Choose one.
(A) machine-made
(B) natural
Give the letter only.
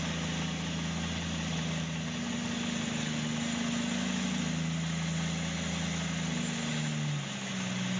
B